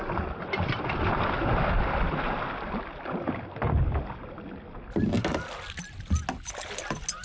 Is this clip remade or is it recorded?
recorded